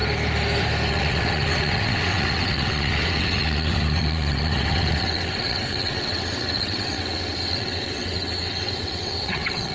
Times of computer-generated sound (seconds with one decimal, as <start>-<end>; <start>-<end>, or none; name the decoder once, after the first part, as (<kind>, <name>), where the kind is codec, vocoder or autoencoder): 0.9-9.7 (vocoder, WaveNeXt)